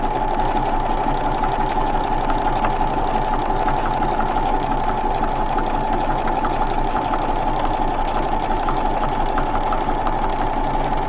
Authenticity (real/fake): real